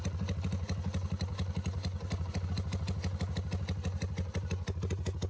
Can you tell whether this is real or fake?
real